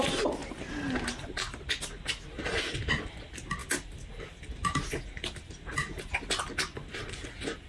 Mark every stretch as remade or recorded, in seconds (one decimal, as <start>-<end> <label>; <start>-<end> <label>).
0.0-7.7 recorded

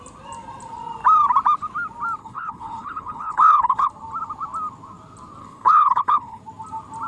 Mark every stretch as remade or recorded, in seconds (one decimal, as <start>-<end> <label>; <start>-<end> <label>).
0.0-2.2 recorded; 2.2-3.9 remade; 3.9-5.4 recorded; 5.4-6.4 remade; 6.4-7.1 recorded

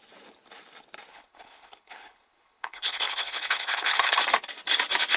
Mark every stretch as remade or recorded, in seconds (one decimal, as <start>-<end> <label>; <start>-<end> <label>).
0.0-1.1 recorded; 1.1-4.2 remade; 4.2-5.2 recorded

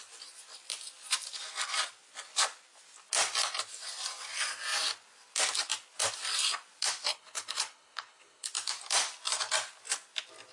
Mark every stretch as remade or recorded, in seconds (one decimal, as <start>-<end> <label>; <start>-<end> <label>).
0.0-7.1 recorded; 7.1-8.5 remade; 8.5-10.5 recorded

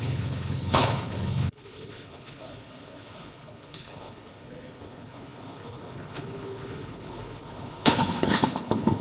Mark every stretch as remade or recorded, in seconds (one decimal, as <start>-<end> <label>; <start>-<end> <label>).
0.0-9.0 remade

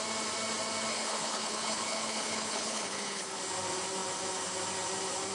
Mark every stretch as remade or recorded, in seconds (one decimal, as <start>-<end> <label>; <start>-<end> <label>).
0.0-0.9 recorded; 0.9-3.4 remade; 3.4-5.3 recorded

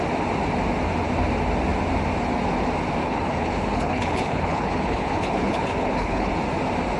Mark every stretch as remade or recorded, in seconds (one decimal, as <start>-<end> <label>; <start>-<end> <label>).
0.0-3.0 recorded; 3.0-6.3 remade; 6.3-7.0 recorded

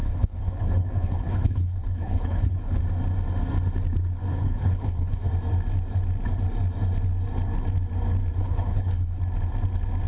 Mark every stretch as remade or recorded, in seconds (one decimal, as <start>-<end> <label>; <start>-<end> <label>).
0.0-2.8 remade; 2.8-4.3 recorded; 4.3-5.3 remade; 5.3-8.4 recorded; 8.4-9.2 remade; 9.2-10.1 recorded